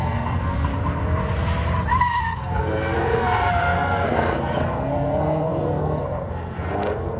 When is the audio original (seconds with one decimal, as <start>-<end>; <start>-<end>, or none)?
0.7-2.2